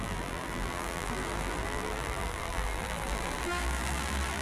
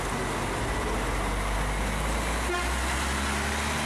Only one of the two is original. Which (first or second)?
second